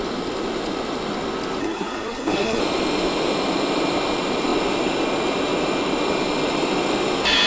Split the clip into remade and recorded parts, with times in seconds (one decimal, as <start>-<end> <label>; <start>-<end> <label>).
0.0-1.6 recorded; 1.6-2.6 remade; 2.6-7.5 recorded

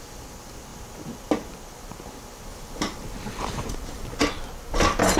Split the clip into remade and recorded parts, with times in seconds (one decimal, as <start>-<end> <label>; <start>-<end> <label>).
0.0-2.5 recorded; 2.5-4.2 remade; 4.2-5.2 recorded

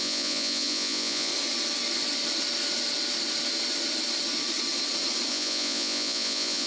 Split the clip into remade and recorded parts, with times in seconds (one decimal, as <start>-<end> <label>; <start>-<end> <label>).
0.0-1.3 remade; 1.3-5.3 recorded; 5.3-6.7 remade

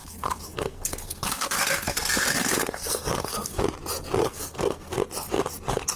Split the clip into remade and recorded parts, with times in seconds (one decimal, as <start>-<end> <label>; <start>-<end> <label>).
0.0-3.6 remade; 3.6-4.2 recorded; 4.2-5.0 remade; 5.0-6.0 recorded

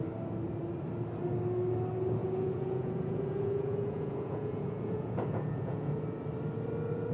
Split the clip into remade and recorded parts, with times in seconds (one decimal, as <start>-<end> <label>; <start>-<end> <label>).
0.0-2.2 recorded; 2.2-6.0 remade; 6.0-7.1 recorded